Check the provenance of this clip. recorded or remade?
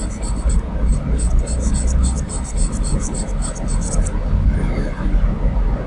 recorded